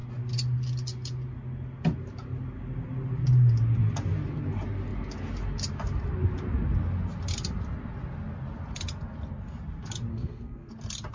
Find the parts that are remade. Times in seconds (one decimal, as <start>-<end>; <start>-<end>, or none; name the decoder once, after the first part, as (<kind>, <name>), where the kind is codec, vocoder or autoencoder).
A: 10.1-10.7 (codec, SNAC)